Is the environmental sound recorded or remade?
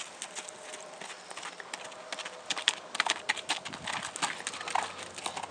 recorded